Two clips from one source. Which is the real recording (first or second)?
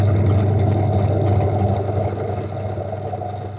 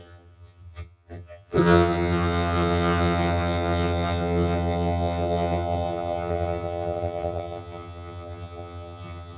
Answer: first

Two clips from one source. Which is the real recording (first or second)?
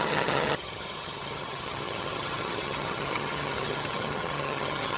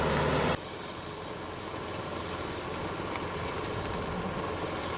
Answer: second